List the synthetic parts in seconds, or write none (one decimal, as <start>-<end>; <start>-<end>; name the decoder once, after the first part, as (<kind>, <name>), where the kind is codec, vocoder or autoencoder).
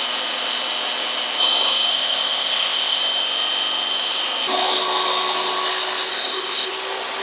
1.9-3.0 (codec, ZipCodec); 6.1-6.7